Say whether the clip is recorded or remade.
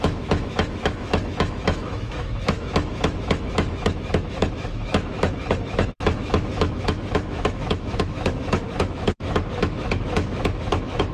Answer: remade